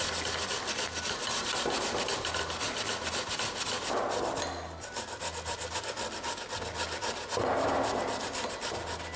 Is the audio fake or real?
real